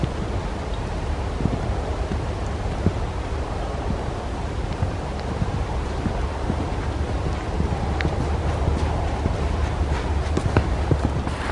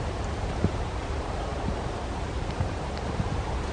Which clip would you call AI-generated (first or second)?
second